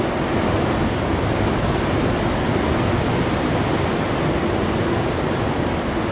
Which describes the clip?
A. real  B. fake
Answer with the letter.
A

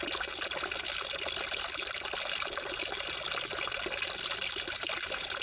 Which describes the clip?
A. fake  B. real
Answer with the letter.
B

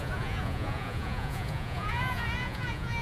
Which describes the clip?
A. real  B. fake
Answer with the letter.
B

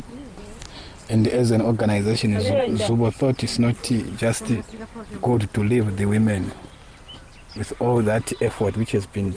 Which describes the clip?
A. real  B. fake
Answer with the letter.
A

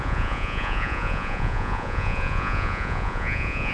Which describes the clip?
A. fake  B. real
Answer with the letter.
A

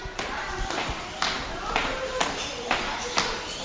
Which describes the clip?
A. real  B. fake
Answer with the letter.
A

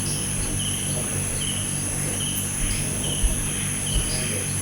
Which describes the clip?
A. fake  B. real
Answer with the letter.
B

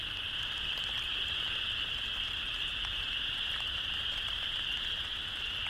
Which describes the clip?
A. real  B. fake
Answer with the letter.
A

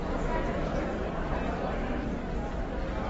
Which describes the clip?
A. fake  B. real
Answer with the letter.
B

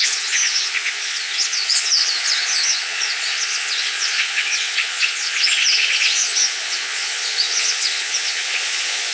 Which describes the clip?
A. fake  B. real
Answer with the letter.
A